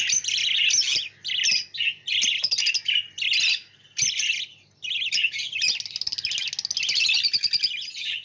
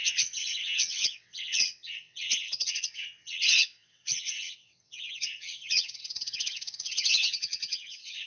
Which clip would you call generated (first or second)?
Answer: second